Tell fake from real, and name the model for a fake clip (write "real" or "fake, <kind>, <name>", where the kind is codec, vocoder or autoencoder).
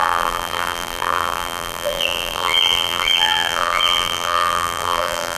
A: fake, vocoder, BigVGAN v2